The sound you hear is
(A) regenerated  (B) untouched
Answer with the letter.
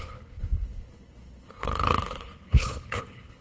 A